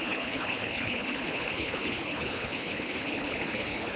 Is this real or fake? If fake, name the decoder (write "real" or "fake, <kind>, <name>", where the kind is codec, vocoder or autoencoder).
fake, codec, HILCodec